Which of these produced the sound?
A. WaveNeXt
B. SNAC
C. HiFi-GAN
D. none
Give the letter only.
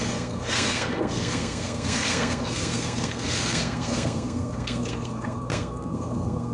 B